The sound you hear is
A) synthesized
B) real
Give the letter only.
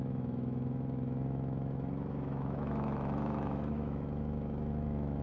A